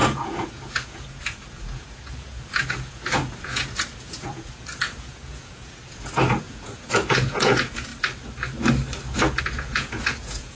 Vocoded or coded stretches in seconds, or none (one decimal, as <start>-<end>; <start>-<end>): 0.0-7.9; 9.4-10.5